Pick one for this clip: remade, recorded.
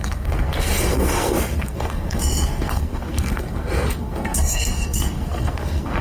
remade